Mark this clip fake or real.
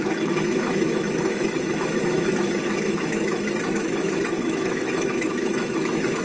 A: fake